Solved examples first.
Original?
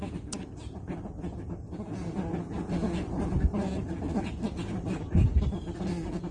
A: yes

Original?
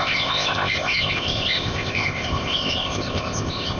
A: no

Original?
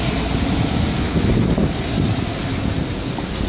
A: yes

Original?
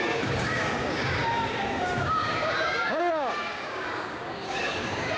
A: no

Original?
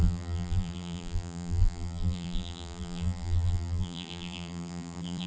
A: no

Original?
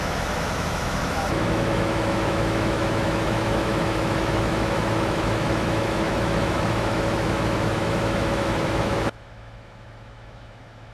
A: no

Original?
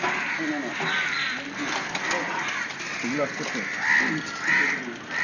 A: yes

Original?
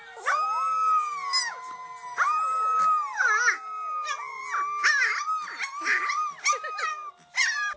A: yes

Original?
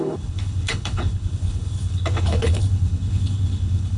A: no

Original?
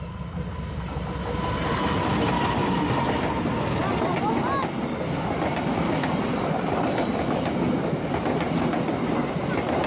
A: yes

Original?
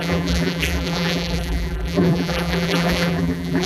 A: no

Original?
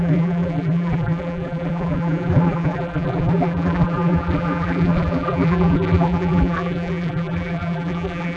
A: no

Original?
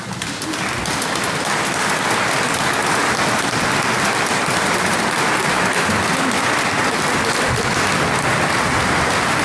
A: yes